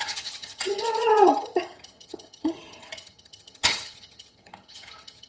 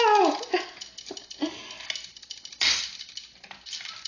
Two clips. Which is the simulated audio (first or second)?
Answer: first